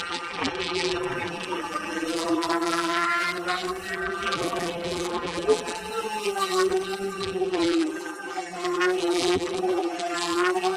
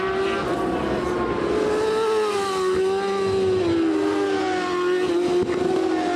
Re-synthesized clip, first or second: first